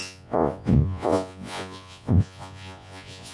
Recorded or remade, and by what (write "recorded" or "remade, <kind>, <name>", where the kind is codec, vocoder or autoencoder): remade, vocoder, Vocos